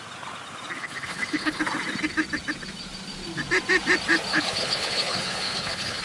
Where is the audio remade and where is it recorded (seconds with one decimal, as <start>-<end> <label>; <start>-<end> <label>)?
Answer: 0.0-0.8 recorded; 0.8-1.6 remade; 1.6-4.3 recorded; 4.3-6.0 remade